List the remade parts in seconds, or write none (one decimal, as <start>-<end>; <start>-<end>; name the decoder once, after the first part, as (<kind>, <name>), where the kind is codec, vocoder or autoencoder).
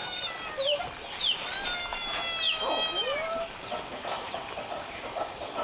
none